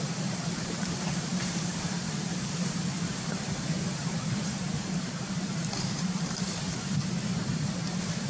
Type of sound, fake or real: fake